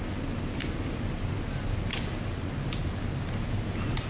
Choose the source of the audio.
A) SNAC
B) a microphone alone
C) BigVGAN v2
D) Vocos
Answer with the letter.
B